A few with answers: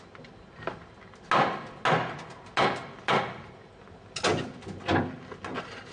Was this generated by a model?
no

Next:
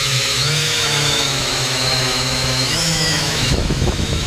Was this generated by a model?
yes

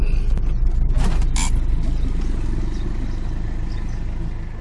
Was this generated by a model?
no